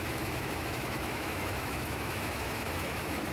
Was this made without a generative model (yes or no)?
no